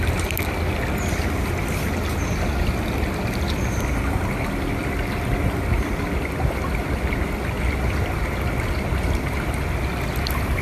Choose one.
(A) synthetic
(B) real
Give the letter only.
B